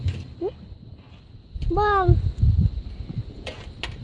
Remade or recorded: recorded